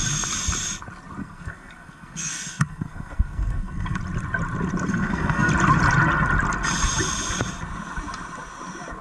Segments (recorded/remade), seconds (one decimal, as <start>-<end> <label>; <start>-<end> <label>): 0.0-1.2 recorded; 1.2-4.0 remade; 4.0-4.9 recorded; 4.9-5.5 remade; 5.5-9.0 recorded